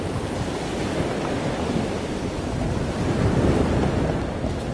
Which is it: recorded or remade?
recorded